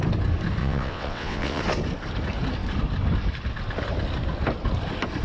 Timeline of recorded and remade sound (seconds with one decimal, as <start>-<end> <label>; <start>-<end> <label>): 0.0-0.6 recorded; 0.6-1.6 remade; 1.6-5.2 recorded